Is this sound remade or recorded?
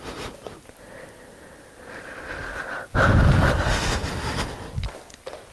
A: recorded